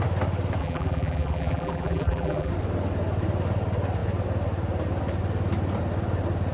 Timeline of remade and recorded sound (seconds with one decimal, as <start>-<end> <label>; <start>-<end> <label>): 0.0-0.6 recorded; 0.6-2.5 remade; 2.5-6.5 recorded